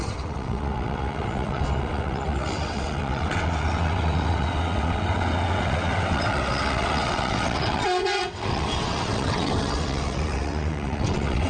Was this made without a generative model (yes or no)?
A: no